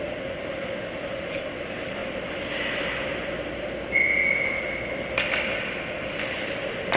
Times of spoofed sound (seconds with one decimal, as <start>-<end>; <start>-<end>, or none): 0.0-2.0; 6.2-7.0

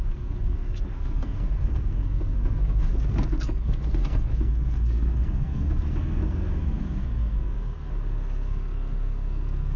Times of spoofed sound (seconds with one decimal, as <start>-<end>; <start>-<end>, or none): 0.0-9.8